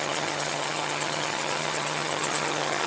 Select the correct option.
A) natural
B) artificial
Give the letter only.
B